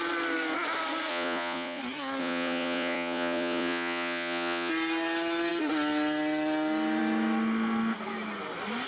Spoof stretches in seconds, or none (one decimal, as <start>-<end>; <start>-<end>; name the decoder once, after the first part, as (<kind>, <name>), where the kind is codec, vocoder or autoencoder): 1.1-1.8 (vocoder, Vocos); 2.2-4.7